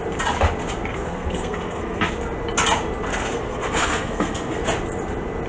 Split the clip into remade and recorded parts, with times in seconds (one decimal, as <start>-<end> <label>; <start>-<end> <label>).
0.0-0.9 recorded; 0.9-2.1 remade; 2.1-3.1 recorded; 3.1-4.6 remade; 4.6-5.5 recorded